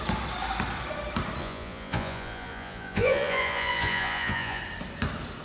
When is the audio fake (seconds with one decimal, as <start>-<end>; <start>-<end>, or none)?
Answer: 1.4-4.6